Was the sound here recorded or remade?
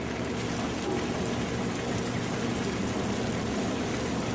recorded